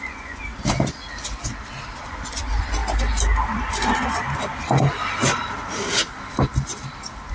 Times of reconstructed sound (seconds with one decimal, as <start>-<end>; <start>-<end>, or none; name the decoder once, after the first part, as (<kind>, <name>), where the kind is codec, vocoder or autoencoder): 0.0-0.5 (vocoder, Vocos); 2.1-2.8